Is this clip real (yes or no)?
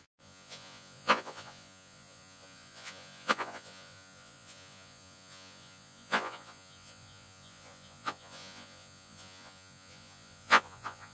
no